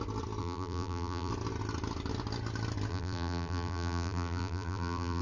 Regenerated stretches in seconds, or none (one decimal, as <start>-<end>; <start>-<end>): 0.4-1.3; 2.9-5.2